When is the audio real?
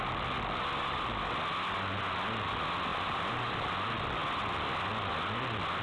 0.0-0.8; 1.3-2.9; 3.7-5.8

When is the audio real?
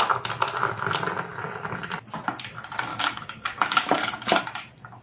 0.0-2.9; 4.4-5.0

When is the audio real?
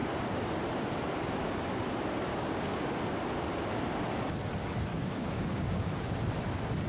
0.0-2.3; 3.0-4.9; 6.1-6.9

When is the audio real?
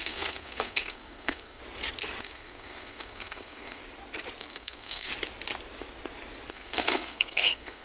1.6-2.2; 3.8-4.4; 5.1-6.5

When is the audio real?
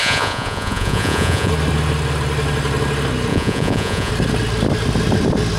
1.5-3.3; 4.1-5.6